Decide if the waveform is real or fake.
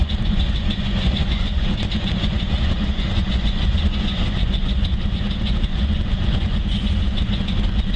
fake